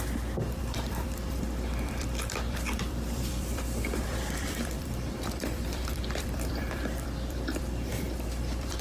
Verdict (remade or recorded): remade